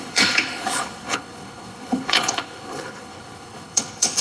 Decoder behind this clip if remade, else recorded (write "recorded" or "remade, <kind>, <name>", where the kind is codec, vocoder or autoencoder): remade, codec, HILCodec